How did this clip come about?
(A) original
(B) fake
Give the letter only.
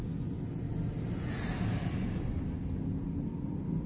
A